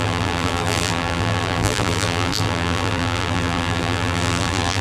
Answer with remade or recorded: remade